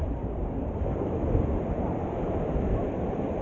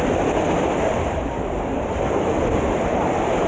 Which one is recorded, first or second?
second